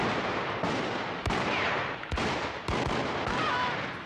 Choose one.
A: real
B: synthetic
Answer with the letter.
A